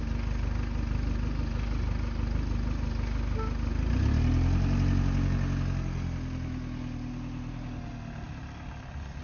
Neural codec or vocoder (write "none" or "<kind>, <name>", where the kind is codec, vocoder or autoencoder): none